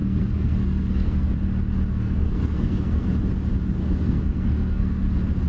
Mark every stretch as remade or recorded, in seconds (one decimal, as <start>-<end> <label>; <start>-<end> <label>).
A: 0.0-1.3 remade; 1.3-1.9 recorded; 1.9-3.1 remade; 3.1-3.8 recorded; 3.8-5.0 remade; 5.0-5.5 recorded